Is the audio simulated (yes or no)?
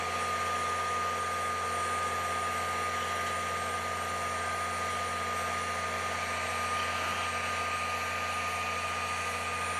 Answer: no